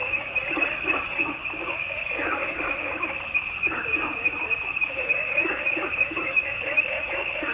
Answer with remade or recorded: remade